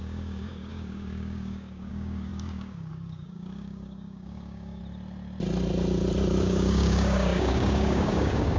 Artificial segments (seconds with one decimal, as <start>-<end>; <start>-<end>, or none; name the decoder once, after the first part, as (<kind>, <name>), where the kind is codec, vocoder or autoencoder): 0.0-4.8 (codec, DAC); 6.4-8.6